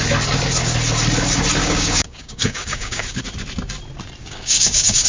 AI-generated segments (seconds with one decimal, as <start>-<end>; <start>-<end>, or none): 1.6-3.2; 4.2-5.1